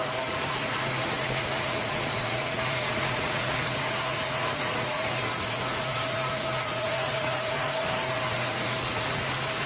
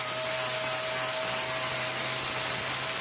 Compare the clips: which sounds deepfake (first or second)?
first